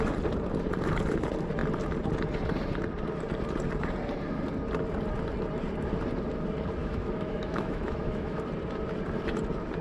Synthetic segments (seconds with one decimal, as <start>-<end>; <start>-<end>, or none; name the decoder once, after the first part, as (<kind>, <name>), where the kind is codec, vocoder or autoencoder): 6.8-8.4 (autoencoder, DAC-VAE)